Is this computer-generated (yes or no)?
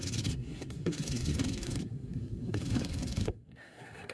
yes